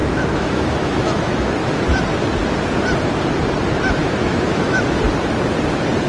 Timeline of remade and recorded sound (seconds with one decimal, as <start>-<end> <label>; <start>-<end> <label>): 0.0-2.0 remade; 2.0-4.0 recorded; 4.0-5.0 remade; 5.0-6.1 recorded

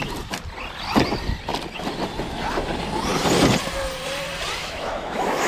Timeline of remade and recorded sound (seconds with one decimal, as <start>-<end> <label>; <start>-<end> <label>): 0.0-4.6 recorded; 4.6-5.5 remade

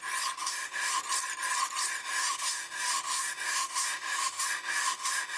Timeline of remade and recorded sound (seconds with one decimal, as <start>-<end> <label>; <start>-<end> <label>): 0.0-0.4 recorded; 0.4-1.0 remade; 1.0-2.0 recorded; 2.0-5.4 remade

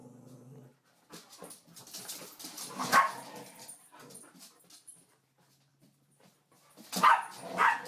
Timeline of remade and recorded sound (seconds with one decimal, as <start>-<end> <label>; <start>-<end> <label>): 0.0-7.9 recorded

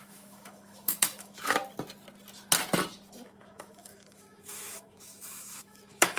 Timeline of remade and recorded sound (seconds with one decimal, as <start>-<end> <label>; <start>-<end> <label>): 0.0-1.6 remade; 1.6-3.2 recorded; 3.2-6.2 remade

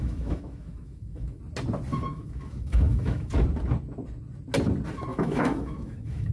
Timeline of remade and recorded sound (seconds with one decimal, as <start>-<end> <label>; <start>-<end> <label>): 0.0-1.4 remade; 1.4-1.9 recorded; 1.9-3.3 remade; 3.3-5.1 recorded; 5.1-6.3 remade

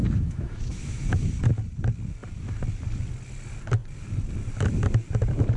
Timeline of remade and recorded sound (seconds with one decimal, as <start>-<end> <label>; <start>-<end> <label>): 0.0-1.4 remade; 1.4-5.6 recorded